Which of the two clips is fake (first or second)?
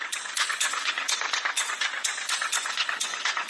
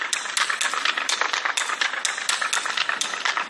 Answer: first